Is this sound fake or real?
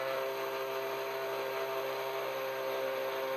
real